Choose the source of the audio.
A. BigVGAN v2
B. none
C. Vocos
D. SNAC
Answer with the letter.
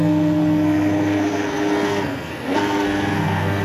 D